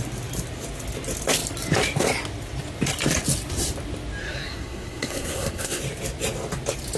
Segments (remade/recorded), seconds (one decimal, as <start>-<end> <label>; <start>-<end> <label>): 0.0-4.2 recorded; 4.2-5.8 remade; 5.8-7.0 recorded

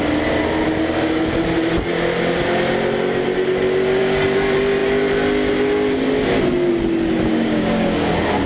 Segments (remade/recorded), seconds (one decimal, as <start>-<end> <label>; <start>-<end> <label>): 0.0-7.3 recorded; 7.3-8.1 remade; 8.1-8.5 recorded

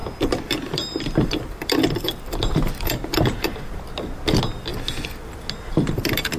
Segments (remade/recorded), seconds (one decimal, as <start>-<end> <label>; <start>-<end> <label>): 0.0-3.8 remade; 3.8-6.4 recorded

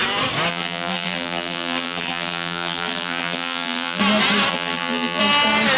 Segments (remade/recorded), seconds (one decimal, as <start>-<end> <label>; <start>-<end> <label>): 0.0-0.5 recorded; 0.5-4.0 remade; 4.0-4.5 recorded; 4.5-5.2 remade; 5.2-5.8 recorded